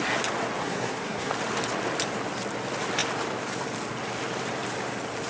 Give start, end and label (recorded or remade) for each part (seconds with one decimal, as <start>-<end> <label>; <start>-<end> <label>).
0.0-0.6 recorded; 0.6-1.3 remade; 1.3-5.3 recorded